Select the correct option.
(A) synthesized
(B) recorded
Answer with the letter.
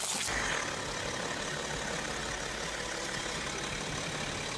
B